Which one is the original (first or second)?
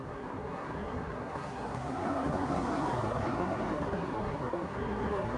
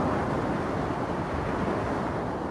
second